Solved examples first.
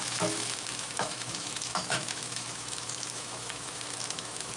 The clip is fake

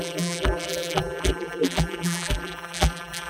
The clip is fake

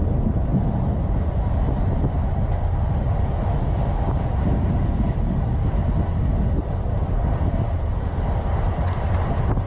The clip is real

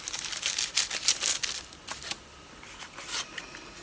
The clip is real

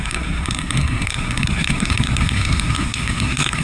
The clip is fake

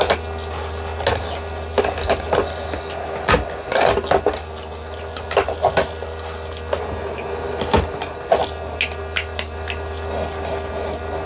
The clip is real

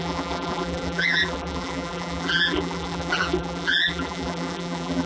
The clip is fake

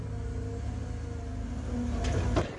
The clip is real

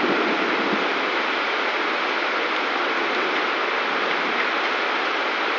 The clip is real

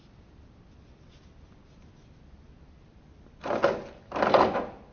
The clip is real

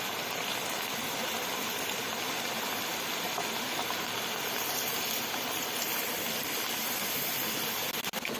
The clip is real